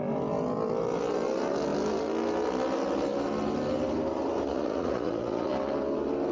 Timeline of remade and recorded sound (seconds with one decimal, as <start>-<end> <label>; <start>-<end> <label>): 0.0-4.5 recorded; 4.5-5.5 remade; 5.5-6.3 recorded